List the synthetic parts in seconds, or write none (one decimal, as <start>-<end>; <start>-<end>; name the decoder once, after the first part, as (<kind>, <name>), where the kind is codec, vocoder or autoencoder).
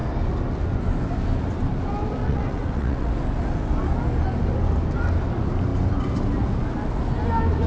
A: 2.2-3.1 (vocoder, WaveNeXt)